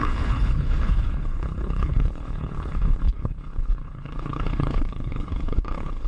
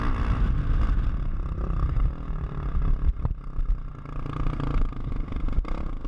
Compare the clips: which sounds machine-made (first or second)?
first